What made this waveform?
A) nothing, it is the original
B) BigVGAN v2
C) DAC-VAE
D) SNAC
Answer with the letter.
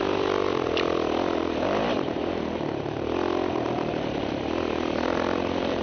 A